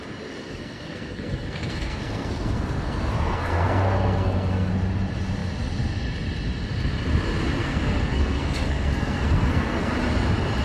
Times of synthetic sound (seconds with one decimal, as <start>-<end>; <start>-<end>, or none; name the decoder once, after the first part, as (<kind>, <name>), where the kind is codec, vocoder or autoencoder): 0.4-4.7 (codec, SNAC); 7.6-9.9